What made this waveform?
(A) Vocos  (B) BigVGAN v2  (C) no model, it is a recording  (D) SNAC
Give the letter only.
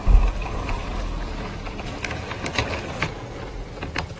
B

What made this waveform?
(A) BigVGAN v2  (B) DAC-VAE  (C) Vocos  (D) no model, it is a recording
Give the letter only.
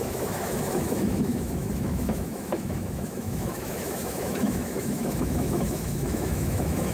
B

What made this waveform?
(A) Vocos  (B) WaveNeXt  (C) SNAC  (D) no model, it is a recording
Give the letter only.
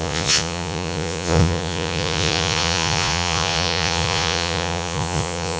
A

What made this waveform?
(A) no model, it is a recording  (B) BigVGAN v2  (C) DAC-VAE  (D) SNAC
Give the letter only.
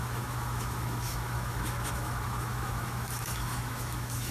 C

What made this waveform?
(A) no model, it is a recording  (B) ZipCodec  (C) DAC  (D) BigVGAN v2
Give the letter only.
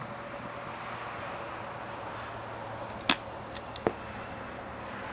A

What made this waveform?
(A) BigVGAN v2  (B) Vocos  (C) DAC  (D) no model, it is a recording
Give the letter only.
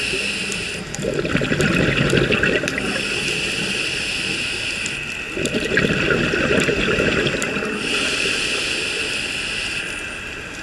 D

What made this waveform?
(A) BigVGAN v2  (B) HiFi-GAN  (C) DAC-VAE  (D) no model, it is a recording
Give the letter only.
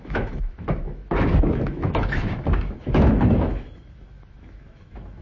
C